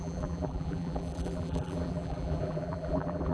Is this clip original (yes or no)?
no